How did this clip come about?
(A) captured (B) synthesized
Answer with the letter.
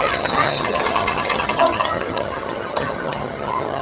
B